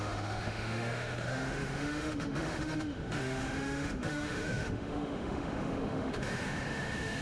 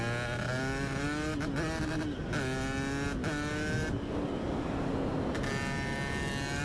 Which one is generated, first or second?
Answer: first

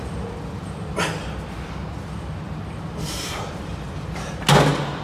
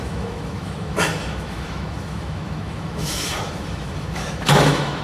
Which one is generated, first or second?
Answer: second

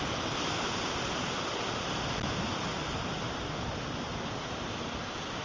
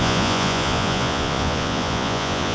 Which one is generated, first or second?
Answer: second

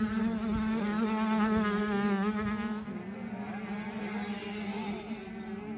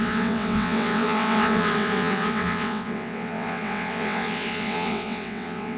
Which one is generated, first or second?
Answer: second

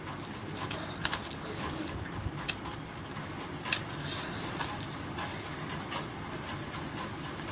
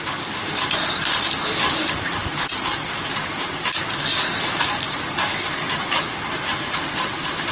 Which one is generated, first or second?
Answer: second